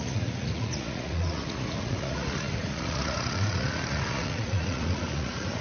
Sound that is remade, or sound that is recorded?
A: remade